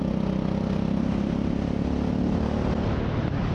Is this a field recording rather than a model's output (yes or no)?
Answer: yes